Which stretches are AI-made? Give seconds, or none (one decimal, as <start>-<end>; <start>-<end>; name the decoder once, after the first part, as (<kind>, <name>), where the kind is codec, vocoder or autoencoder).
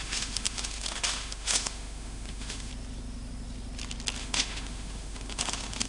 0.0-2.7 (autoencoder, DAC-VAE); 4.2-5.9